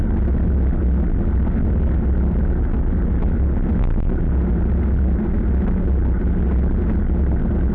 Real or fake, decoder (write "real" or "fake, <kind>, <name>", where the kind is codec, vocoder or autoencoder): real